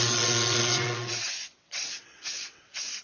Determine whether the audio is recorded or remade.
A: remade